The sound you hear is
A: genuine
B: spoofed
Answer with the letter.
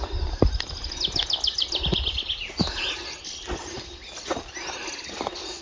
A